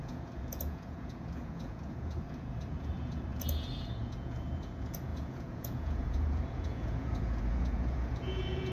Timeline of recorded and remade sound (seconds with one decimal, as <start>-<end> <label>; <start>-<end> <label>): 0.0-8.7 remade